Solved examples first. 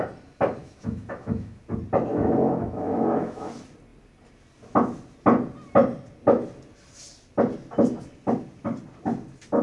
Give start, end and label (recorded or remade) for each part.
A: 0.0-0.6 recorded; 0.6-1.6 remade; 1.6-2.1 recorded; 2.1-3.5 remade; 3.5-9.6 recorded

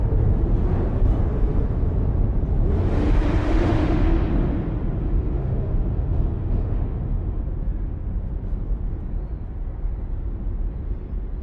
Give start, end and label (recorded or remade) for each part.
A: 0.0-3.4 recorded; 3.4-4.3 remade; 4.3-5.0 recorded; 5.0-7.4 remade; 7.4-11.4 recorded

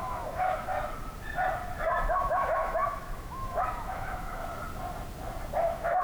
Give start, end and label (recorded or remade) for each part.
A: 0.0-0.7 remade; 0.7-2.1 recorded; 2.1-4.4 remade; 4.4-5.6 recorded; 5.6-6.0 remade